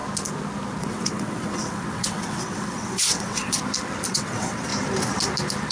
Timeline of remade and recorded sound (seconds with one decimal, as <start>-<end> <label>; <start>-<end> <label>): 0.0-0.8 recorded; 0.8-3.6 remade; 3.6-4.1 recorded; 4.1-4.7 remade; 4.7-5.7 recorded